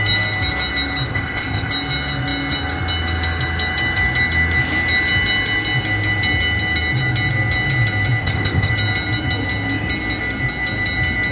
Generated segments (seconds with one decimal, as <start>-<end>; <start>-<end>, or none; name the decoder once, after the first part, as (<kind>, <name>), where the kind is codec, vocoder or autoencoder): 1.1-1.7 (codec, ZipCodec); 8.2-8.7